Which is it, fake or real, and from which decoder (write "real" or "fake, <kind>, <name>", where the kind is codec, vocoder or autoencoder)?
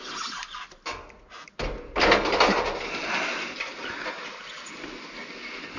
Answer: real